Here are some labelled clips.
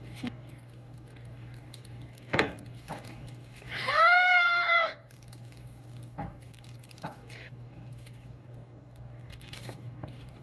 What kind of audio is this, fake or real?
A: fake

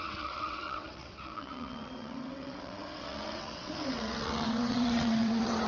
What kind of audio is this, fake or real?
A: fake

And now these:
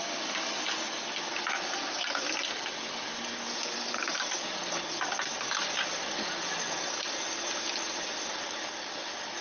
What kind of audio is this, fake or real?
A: real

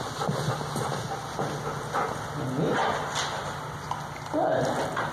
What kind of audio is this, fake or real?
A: real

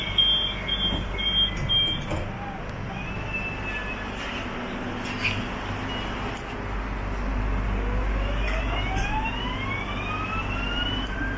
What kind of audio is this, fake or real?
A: real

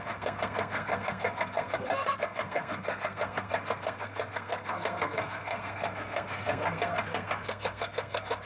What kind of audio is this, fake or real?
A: fake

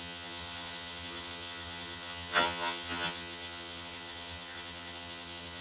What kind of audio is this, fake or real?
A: fake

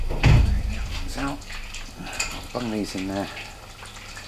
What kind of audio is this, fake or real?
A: real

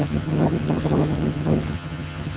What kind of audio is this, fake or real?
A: fake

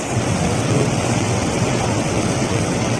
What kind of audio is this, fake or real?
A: fake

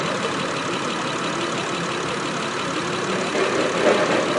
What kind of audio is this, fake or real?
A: real